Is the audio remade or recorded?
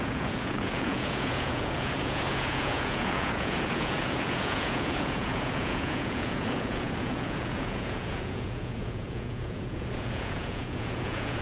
remade